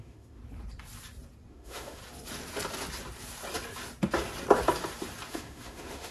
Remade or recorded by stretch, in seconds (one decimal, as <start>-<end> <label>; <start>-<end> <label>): 0.0-0.4 remade; 0.4-1.5 recorded; 1.5-2.0 remade; 2.0-5.3 recorded; 5.3-6.1 remade